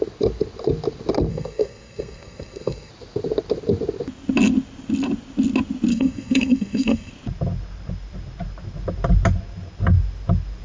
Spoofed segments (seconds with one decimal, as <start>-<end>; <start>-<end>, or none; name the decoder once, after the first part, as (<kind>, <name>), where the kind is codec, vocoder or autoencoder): 1.3-2.9 (codec, SNAC); 5.9-7.1